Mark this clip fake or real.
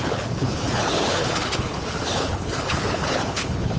fake